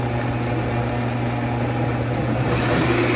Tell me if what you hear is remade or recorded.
recorded